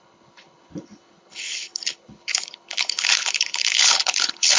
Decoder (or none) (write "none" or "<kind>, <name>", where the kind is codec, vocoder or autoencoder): codec, HILCodec